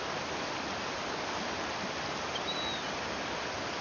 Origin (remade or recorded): recorded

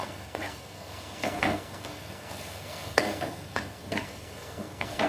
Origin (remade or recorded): remade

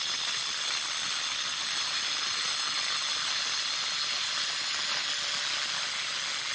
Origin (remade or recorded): recorded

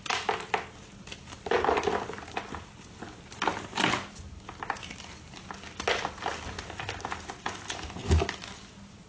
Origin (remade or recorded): recorded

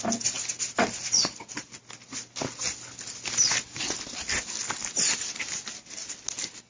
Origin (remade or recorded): recorded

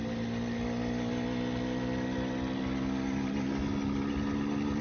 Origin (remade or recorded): recorded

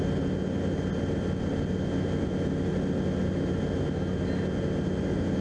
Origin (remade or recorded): recorded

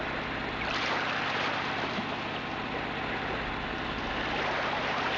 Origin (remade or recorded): recorded